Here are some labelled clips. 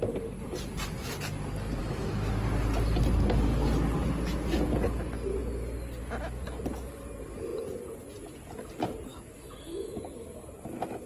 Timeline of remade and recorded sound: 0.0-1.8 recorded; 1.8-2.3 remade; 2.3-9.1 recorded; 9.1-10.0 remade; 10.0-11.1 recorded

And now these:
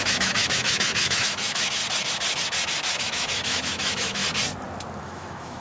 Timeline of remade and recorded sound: 0.0-1.8 remade; 1.8-3.0 recorded; 3.0-4.2 remade; 4.2-5.0 recorded; 5.0-5.6 remade

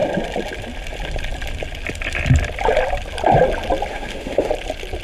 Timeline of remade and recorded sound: 0.0-3.9 recorded; 3.9-4.5 remade; 4.5-5.0 recorded